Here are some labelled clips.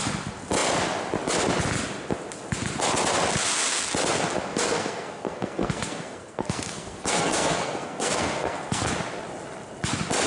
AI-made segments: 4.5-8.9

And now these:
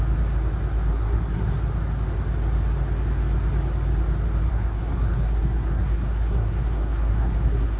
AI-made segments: 0.9-1.6; 4.5-7.8